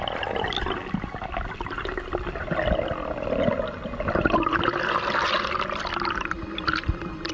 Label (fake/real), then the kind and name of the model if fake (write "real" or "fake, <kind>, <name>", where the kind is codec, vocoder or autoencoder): real